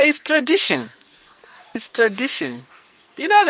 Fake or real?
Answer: fake